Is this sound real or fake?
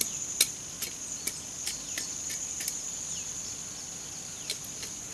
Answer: real